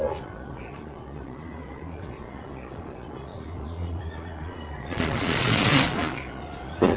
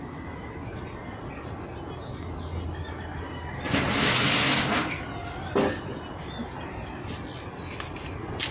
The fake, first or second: first